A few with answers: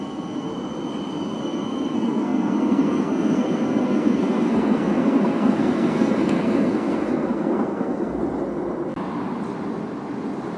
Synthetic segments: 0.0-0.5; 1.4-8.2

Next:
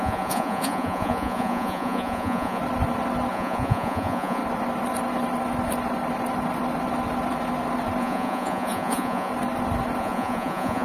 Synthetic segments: 0.0-2.6; 3.3-4.4; 8.0-9.3; 10.0-10.8

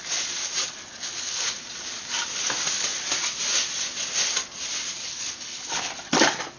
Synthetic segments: 0.9-1.5; 5.0-5.9

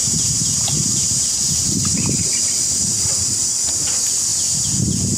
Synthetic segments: 0.0-3.1

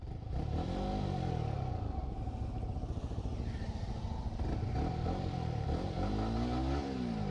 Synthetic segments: 0.0-2.0; 4.9-7.3